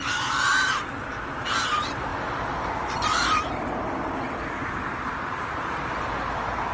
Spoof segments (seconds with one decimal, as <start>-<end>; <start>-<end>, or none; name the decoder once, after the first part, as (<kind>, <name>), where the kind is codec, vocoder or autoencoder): none